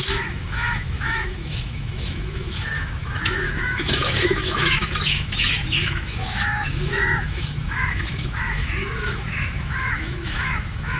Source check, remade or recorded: remade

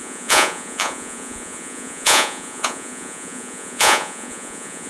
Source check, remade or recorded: remade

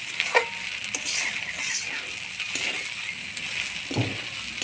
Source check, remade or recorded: recorded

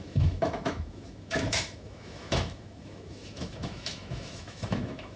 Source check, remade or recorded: remade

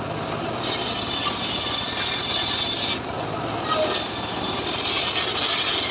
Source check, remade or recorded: recorded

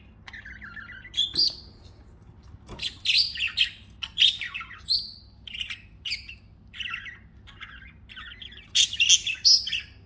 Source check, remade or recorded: recorded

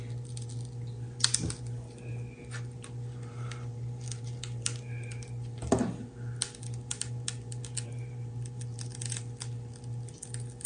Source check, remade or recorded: recorded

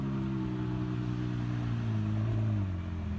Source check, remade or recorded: recorded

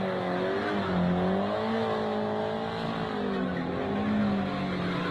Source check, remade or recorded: recorded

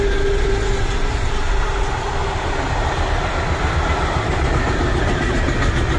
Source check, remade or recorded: recorded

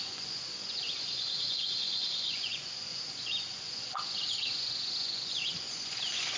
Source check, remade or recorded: remade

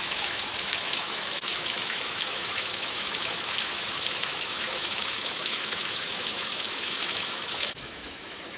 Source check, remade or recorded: remade